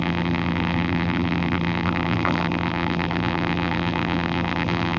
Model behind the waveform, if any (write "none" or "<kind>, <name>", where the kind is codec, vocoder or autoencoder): vocoder, BigVGAN v2